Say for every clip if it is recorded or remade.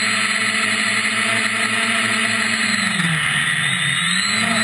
recorded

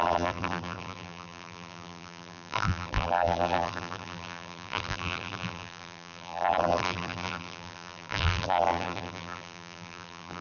remade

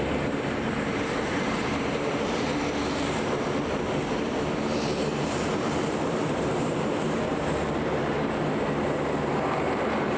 remade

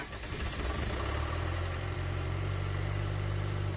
remade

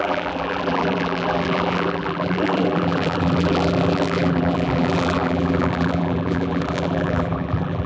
remade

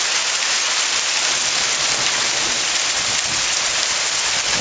recorded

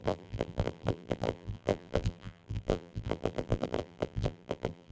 remade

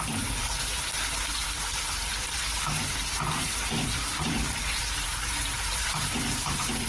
remade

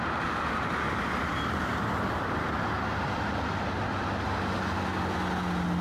recorded